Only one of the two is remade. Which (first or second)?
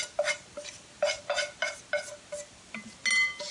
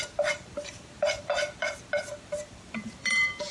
second